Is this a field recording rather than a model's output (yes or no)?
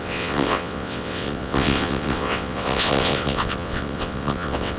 no